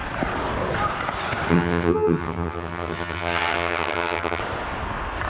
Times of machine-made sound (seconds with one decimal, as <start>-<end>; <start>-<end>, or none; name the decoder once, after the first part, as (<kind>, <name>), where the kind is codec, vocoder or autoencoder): 1.5-4.4 (vocoder, HiFi-GAN)